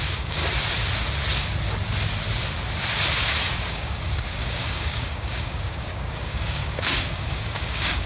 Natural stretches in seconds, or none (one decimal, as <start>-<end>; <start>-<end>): 0.4-3.7